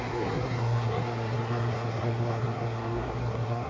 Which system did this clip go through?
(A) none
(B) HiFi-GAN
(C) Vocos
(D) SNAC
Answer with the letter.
D